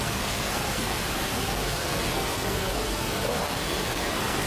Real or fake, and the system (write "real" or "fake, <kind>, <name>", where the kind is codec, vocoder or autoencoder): fake, codec, SNAC